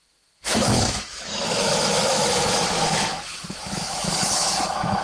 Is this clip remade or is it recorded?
remade